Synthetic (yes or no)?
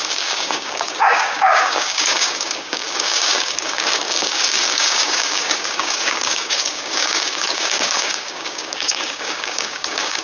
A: yes